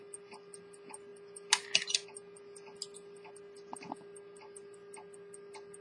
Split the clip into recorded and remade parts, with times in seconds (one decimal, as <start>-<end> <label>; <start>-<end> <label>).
0.0-5.8 recorded